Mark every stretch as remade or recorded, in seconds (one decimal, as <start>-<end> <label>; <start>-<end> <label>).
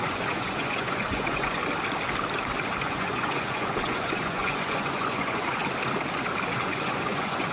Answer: 0.0-1.6 remade; 1.6-2.8 recorded; 2.8-5.6 remade; 5.6-6.6 recorded; 6.6-7.5 remade